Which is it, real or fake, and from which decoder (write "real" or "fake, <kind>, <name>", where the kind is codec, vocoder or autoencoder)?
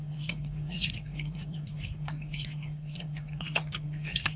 fake, codec, SNAC